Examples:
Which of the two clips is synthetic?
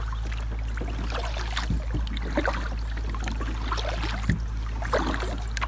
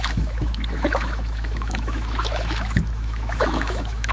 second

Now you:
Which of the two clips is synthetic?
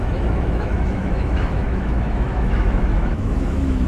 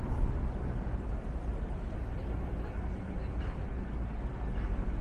first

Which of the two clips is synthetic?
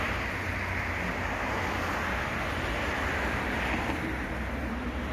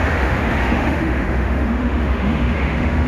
second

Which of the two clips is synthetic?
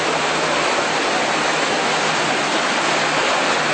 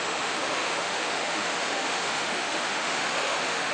second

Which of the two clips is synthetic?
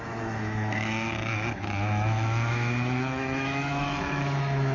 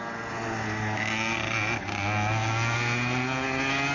first